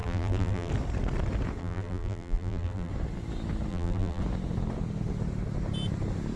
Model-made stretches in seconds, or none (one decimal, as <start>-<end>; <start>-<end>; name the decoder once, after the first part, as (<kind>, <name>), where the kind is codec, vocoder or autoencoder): 0.0-0.7 (vocoder, BigVGAN v2); 1.6-2.9; 3.7-4.2